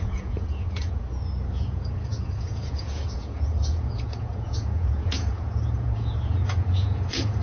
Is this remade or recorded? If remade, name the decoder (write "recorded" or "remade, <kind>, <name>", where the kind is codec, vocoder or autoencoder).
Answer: remade, vocoder, Vocos